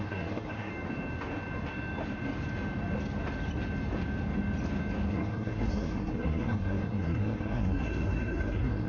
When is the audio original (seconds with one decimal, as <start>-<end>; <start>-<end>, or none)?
0.7-5.1